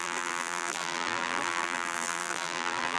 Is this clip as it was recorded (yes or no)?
no